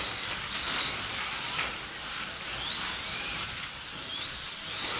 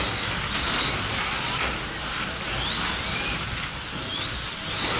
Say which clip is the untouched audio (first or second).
second